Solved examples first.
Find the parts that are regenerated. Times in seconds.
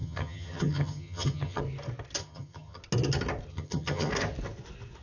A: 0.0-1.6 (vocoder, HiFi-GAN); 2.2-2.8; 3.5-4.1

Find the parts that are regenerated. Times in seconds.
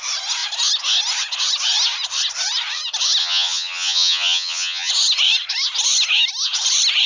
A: 3.2-4.9 (vocoder, HiFi-GAN)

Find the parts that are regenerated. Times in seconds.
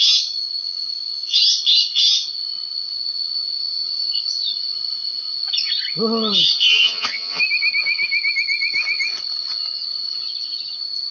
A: 6.7-7.4 (vocoder, HiFi-GAN)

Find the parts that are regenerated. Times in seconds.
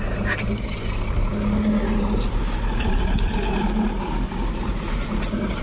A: none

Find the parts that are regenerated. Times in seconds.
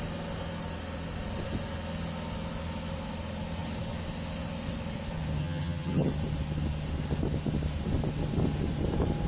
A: 5.4-6.1 (vocoder, HiFi-GAN)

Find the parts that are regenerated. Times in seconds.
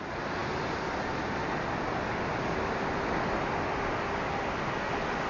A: none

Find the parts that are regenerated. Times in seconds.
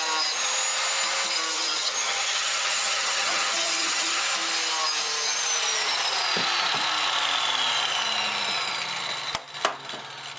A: 1.5-4.2 (vocoder, HiFi-GAN)